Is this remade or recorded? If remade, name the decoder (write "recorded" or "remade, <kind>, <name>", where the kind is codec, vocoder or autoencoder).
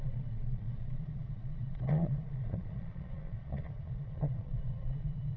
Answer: remade, vocoder, Vocos